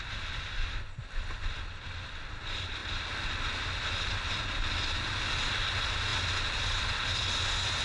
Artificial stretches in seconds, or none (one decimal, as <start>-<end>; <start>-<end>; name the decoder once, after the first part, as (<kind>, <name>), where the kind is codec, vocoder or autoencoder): none